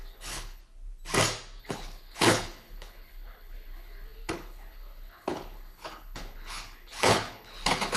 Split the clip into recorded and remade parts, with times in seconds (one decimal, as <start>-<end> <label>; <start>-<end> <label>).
0.0-0.6 remade; 0.6-1.6 recorded; 1.6-8.0 remade